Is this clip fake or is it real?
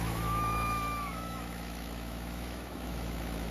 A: fake